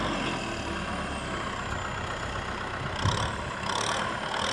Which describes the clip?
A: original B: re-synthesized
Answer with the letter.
A